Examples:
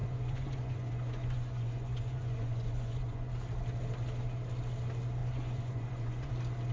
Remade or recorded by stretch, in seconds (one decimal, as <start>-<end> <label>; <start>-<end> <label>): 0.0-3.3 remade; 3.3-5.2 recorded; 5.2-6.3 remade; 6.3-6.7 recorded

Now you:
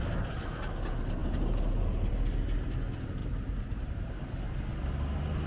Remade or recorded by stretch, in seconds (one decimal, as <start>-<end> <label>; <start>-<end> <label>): 0.0-5.5 recorded

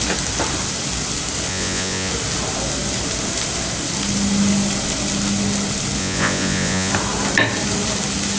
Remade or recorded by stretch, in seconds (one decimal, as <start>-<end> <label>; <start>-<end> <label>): 0.0-1.5 recorded; 1.5-2.1 remade; 2.1-6.0 recorded; 6.0-6.9 remade; 6.9-8.4 recorded